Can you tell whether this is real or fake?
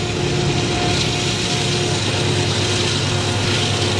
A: real